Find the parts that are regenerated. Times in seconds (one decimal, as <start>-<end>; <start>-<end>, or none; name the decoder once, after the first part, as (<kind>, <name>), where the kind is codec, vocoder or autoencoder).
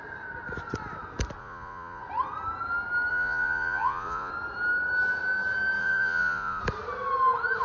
1.4-2.0 (vocoder, Vocos); 3.1-4.3; 5.8-6.6